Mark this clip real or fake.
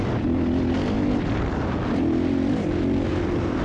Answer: real